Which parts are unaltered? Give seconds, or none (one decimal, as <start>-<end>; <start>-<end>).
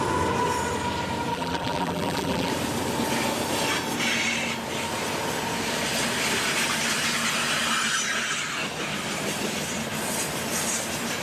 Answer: 0.0-1.3; 2.5-11.2